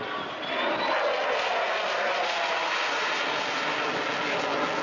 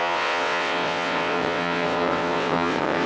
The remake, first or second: second